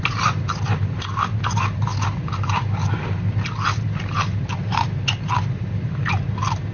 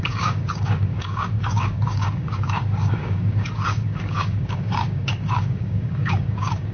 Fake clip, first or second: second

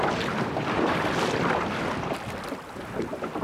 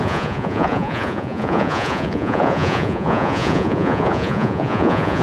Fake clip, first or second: second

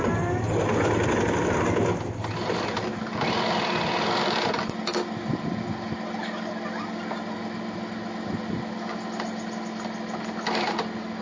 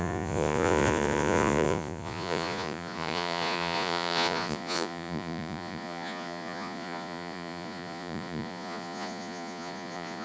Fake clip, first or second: second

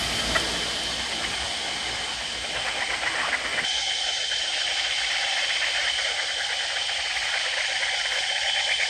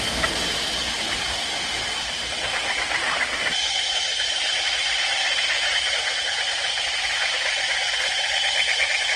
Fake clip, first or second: second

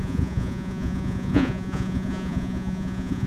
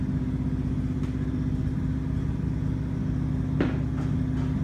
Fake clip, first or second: first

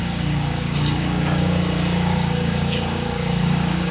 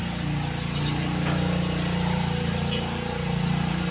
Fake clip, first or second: first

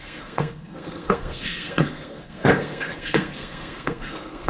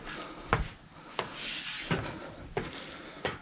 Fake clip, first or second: first